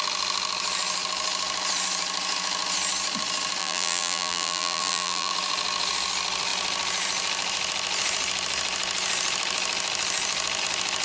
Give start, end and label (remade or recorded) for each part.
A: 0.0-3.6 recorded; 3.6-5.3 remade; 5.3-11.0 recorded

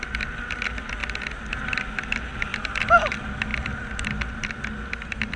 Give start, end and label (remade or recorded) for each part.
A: 0.0-2.5 recorded; 2.5-3.0 remade; 3.0-5.4 recorded

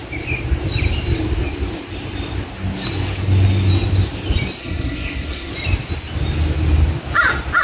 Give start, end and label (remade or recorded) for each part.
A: 0.0-4.6 recorded; 4.6-5.5 remade; 5.5-7.6 recorded

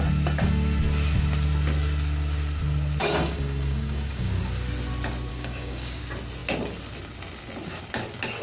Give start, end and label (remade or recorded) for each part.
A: 0.0-3.0 recorded; 3.0-4.3 remade; 4.3-5.3 recorded; 5.3-6.0 remade; 6.0-8.4 recorded

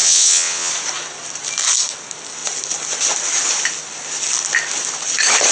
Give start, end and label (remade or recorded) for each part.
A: 0.0-0.7 remade; 0.7-5.5 recorded